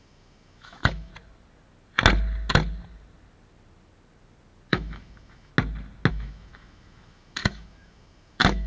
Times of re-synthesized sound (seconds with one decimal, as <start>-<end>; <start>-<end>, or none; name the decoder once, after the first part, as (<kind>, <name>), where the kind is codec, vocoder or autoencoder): 0.0-1.1 (autoencoder, DAC-VAE); 4.7-5.5; 6.1-8.7